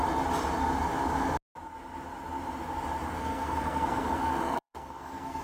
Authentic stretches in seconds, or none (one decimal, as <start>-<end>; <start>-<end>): 0.0-3.2